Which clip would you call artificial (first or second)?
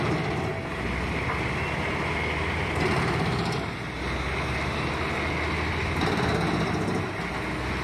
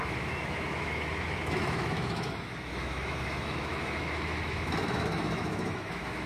second